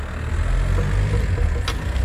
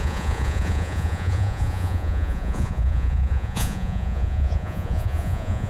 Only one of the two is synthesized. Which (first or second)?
second